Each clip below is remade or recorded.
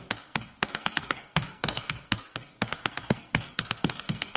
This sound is remade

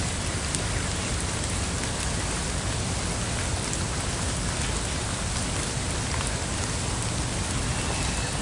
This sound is recorded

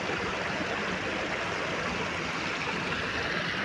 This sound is recorded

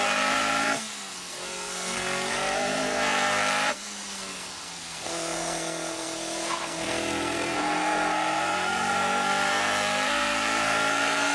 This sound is remade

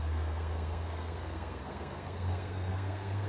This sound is remade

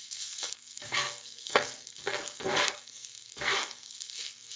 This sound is remade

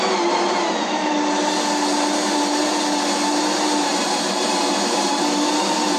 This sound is recorded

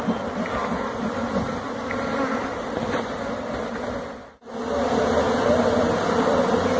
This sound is recorded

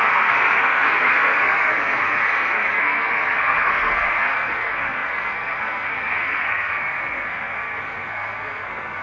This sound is remade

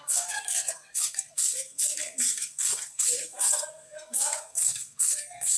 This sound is remade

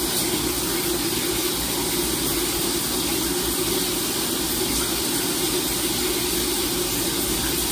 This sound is recorded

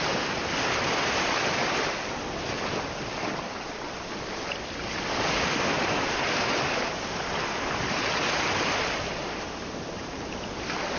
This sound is recorded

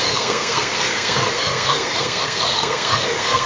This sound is remade